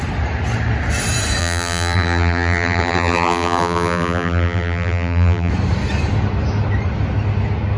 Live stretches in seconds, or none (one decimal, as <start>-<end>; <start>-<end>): 0.0-1.4; 5.5-7.8